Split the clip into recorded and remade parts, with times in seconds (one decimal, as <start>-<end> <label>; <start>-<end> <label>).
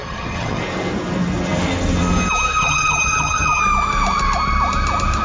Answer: 0.0-0.6 remade; 0.6-2.6 recorded; 2.6-3.6 remade; 3.6-5.2 recorded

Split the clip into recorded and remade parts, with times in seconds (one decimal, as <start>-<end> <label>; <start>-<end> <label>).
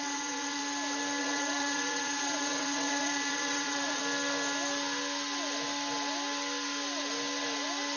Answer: 0.0-0.6 remade; 0.6-1.2 recorded; 1.2-4.0 remade; 4.0-8.0 recorded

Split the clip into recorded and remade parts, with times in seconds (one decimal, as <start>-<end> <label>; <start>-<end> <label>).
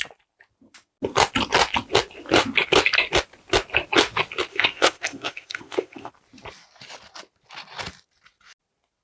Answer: 0.0-4.5 recorded; 4.5-6.1 remade; 6.1-9.0 recorded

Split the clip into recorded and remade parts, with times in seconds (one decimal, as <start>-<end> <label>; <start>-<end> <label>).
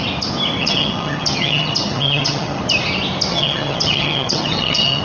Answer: 0.0-0.6 recorded; 0.6-2.6 remade; 2.6-3.3 recorded; 3.3-5.0 remade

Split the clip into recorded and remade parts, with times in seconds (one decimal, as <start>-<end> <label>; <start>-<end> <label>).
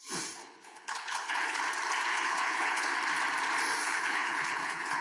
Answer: 0.0-0.4 recorded; 0.4-1.6 remade; 1.6-2.1 recorded; 2.1-2.9 remade; 2.9-3.8 recorded; 3.8-5.0 remade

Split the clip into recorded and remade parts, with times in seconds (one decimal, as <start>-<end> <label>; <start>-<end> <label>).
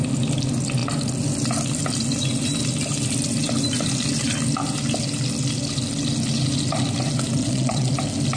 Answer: 0.0-7.4 recorded; 7.4-7.9 remade; 7.9-8.4 recorded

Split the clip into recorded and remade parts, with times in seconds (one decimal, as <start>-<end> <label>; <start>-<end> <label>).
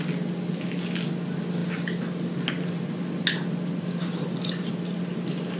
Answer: 0.0-5.6 recorded